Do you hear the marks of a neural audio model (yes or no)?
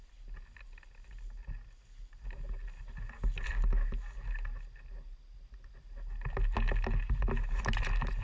no